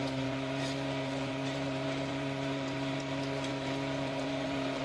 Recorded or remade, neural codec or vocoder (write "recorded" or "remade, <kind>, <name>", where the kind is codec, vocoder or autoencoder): remade, vocoder, BigVGAN v2